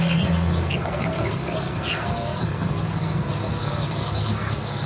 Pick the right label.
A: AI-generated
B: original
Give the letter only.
A